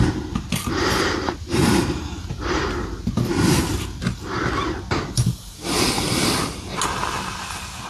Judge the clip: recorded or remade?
recorded